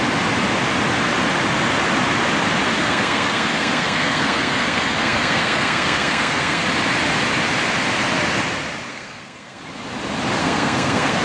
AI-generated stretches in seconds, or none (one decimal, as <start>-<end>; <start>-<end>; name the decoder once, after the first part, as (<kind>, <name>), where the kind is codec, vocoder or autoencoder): 2.8-6.6 (codec, SNAC); 8.9-9.6; 10.4-11.2